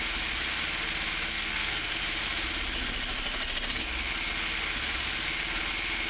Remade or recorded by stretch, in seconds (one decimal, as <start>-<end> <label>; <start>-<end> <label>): 0.0-1.3 recorded; 1.3-2.0 remade; 2.0-6.1 recorded